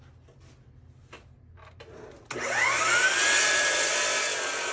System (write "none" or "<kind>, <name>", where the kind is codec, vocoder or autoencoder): none